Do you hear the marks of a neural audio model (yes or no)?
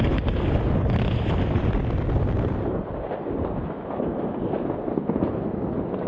no